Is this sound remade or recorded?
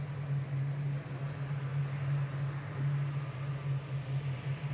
recorded